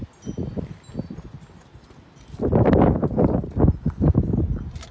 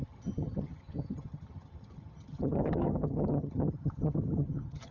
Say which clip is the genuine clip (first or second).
first